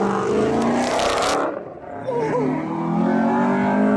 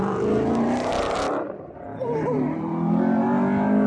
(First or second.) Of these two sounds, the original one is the first